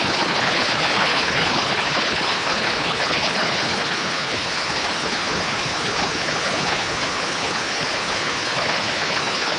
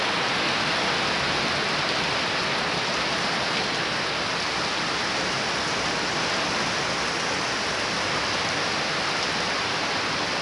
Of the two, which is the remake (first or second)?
first